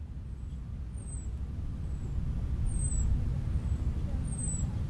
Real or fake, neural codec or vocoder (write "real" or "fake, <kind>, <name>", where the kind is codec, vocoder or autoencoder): real